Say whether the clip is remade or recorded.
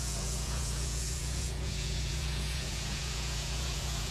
remade